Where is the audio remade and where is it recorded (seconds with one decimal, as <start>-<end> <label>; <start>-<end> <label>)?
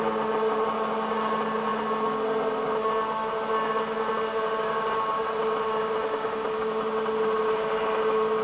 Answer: 0.0-8.4 recorded